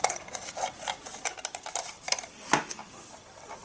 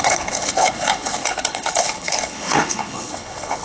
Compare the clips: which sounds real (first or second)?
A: first